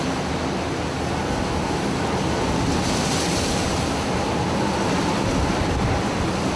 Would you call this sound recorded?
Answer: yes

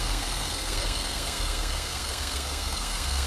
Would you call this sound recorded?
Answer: no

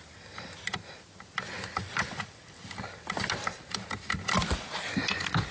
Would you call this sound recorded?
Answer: yes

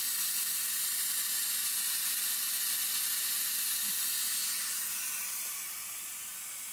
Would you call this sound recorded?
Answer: yes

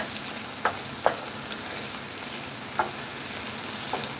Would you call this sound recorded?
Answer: yes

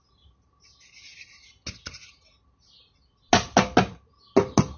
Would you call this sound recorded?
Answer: yes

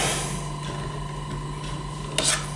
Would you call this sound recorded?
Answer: yes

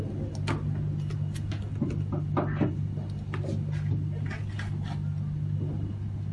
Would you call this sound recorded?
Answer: yes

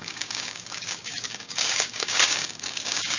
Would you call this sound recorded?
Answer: no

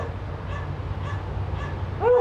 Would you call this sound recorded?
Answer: yes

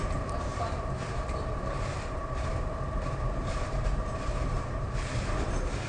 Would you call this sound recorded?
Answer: no